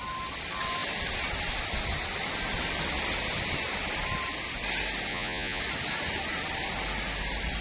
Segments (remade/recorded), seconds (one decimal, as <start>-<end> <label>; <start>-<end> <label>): 0.0-5.1 recorded; 5.1-5.6 remade; 5.6-7.6 recorded